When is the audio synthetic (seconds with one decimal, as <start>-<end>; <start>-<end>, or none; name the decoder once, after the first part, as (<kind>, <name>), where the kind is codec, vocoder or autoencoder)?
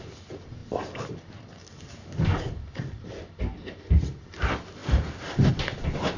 none